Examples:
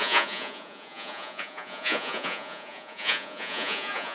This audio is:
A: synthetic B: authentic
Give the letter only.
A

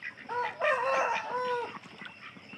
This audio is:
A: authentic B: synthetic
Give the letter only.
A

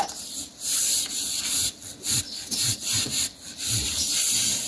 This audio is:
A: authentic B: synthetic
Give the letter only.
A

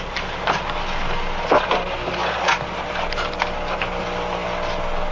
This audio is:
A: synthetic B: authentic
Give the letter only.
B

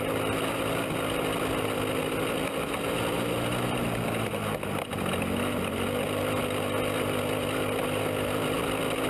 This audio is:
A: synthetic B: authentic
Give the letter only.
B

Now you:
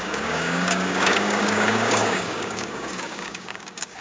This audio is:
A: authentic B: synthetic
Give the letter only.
B